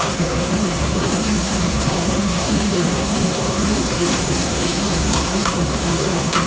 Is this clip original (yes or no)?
no